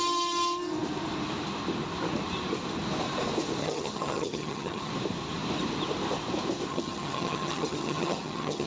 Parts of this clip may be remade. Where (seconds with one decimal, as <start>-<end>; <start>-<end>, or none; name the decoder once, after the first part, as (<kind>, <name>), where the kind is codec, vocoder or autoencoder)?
3.6-4.9 (vocoder, HiFi-GAN); 6.7-8.7